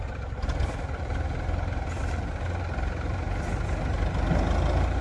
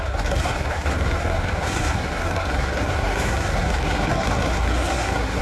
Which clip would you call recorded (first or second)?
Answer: first